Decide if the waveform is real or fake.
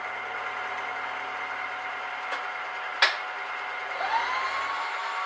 real